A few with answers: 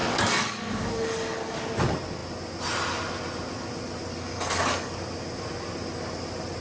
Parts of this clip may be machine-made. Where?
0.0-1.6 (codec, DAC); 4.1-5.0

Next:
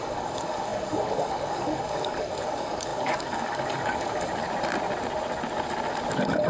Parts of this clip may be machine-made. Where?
0.0-4.4 (codec, DAC)

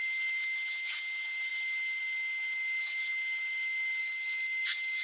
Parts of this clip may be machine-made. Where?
none

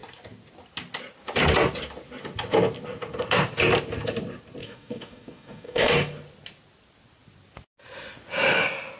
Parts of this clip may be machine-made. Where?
4.6-5.9 (codec, DAC)

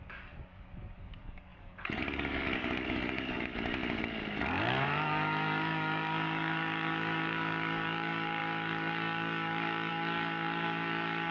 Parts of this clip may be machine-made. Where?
0.0-11.3 (codec, DAC)

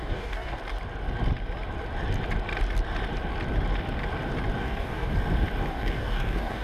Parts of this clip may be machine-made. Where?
0.0-0.6 (codec, DAC); 4.6-5.1; 5.7-6.6